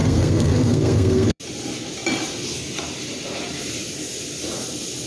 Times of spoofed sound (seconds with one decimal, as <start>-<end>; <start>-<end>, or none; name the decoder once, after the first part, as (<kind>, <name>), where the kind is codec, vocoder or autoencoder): 0.0-1.4 (codec, SNAC)